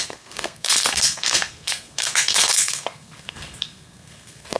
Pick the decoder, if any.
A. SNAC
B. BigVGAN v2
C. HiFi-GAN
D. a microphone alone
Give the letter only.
A